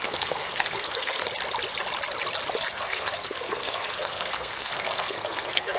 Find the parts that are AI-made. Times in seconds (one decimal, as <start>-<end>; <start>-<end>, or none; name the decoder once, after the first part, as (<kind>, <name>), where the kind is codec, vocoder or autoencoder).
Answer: 0.0-1.2 (codec, SNAC); 2.7-5.8